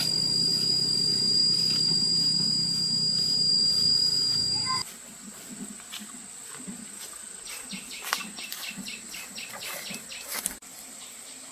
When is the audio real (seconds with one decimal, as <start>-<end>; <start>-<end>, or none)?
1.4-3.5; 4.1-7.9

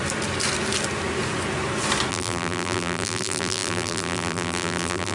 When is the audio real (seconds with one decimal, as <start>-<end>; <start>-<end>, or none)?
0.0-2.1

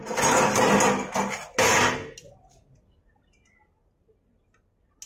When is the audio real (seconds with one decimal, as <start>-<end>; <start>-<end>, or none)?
0.0-5.1

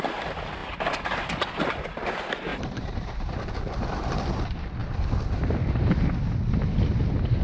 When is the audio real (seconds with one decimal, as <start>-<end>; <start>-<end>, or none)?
0.0-2.5; 3.3-7.4

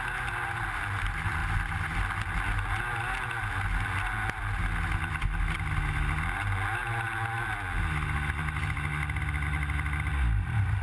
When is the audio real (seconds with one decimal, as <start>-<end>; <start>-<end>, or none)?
0.0-10.8